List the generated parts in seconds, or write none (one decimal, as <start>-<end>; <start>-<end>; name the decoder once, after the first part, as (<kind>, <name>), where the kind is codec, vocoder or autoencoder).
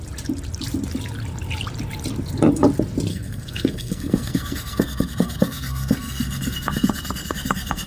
3.1-7.9 (codec, SNAC)